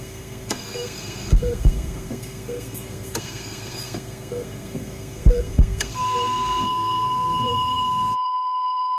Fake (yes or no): yes